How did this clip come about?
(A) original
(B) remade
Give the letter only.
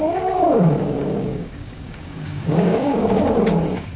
B